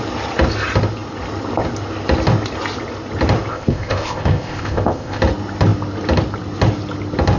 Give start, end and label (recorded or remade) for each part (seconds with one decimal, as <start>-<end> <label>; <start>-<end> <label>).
0.0-3.5 recorded; 3.5-5.2 remade; 5.2-7.4 recorded